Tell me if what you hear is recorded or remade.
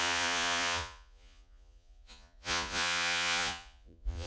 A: remade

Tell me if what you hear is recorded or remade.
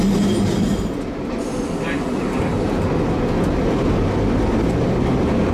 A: recorded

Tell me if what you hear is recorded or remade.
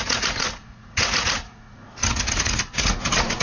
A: remade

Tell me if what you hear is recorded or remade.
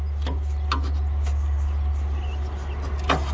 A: recorded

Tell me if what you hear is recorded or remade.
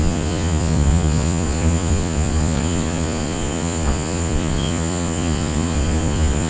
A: remade